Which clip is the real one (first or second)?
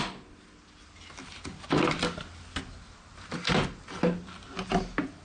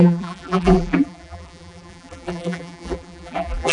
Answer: first